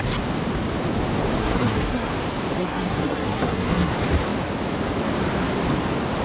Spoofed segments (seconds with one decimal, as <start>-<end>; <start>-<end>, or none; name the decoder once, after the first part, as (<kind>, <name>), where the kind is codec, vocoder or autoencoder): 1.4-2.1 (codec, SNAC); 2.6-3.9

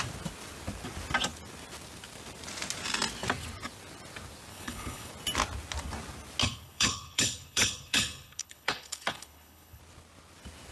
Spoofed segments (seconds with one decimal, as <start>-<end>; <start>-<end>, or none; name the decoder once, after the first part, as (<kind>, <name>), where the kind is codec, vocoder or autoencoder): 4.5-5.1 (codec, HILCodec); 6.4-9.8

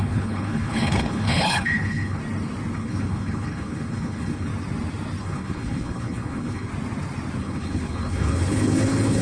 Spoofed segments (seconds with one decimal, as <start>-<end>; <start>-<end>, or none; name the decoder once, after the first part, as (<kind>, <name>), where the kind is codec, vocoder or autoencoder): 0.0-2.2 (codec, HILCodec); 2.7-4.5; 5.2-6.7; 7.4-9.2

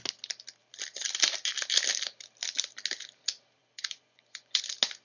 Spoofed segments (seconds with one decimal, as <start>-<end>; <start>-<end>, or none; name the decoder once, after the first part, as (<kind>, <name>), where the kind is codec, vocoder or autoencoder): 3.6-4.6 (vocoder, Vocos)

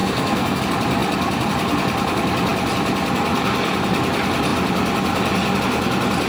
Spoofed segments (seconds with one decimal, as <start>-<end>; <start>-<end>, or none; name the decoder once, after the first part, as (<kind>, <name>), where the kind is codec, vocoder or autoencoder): 0.0-0.6 (codec, SNAC)

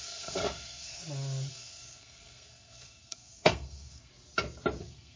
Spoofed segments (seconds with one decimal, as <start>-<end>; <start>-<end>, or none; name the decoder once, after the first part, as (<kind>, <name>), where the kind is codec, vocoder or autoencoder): 0.0-1.0 (codec, SNAC); 1.5-4.1; 4.8-5.2

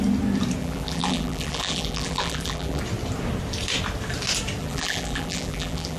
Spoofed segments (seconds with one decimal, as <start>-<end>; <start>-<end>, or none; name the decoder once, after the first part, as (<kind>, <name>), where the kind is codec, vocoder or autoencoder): 0.6-2.8 (vocoder, BigVGAN v2); 4.6-6.0

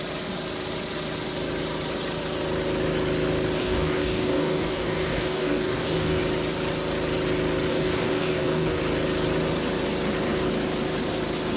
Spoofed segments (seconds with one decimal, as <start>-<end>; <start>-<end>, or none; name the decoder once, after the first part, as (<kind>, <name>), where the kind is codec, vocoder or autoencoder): 3.6-6.2 (codec, DAC); 7.7-8.8